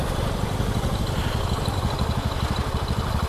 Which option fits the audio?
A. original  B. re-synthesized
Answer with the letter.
A